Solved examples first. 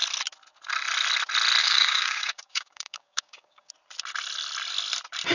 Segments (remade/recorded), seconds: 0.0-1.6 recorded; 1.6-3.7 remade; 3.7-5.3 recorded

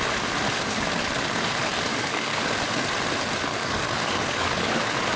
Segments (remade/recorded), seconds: 0.0-1.9 recorded; 1.9-2.5 remade; 2.5-3.5 recorded; 3.5-4.8 remade; 4.8-5.2 recorded

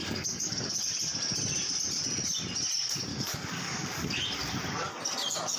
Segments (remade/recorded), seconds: 0.0-0.8 remade; 0.8-3.1 recorded; 3.1-4.1 remade; 4.1-5.6 recorded

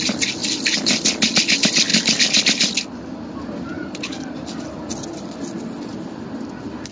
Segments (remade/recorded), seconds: 0.0-6.9 recorded